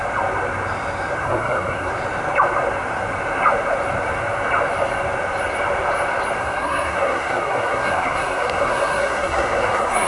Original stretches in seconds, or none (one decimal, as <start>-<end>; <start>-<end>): 0.0-1.2; 1.9-6.4